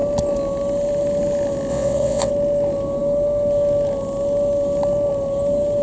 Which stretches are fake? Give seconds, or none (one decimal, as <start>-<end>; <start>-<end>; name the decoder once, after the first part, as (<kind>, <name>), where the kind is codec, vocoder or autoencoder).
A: 1.7-2.3 (vocoder, WaveNeXt)